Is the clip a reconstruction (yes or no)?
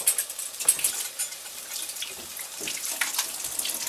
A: no